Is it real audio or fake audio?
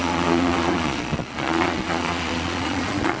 fake